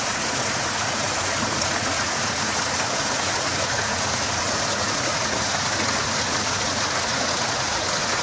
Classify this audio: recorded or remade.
remade